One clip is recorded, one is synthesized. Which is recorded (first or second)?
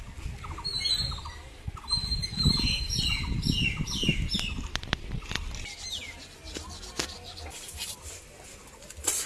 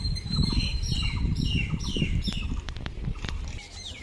first